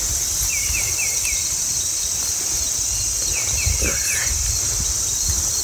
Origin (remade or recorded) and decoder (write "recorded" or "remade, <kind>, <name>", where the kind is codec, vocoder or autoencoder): recorded